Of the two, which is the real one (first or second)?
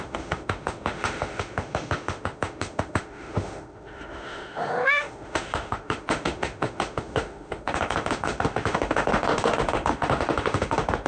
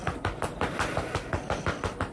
second